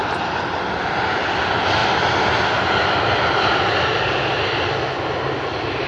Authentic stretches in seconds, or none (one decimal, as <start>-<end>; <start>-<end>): 0.0-5.9